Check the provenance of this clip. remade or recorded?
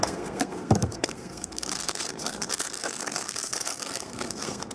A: remade